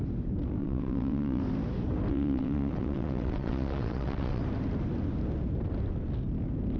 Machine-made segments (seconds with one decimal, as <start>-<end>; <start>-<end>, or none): 0.6-1.4; 2.1-4.4